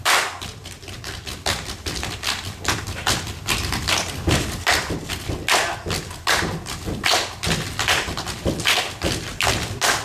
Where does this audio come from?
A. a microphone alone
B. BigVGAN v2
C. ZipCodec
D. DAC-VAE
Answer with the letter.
A